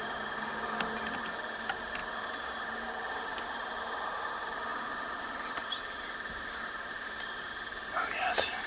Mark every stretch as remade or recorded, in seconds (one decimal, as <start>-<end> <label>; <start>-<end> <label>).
0.0-8.7 recorded